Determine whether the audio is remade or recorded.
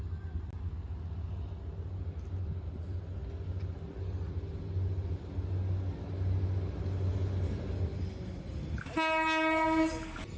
recorded